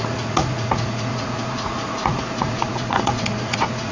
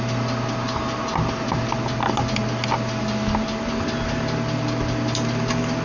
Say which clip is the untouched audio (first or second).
second